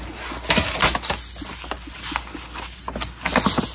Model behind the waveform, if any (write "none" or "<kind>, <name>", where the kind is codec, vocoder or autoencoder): none